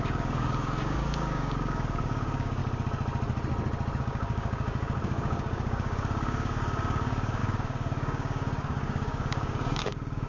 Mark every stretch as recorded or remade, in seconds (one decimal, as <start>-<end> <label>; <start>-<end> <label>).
0.0-2.6 remade; 2.6-4.0 recorded; 4.0-10.3 remade